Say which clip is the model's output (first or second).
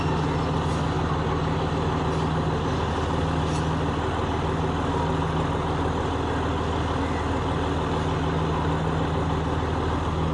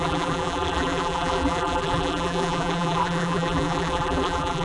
second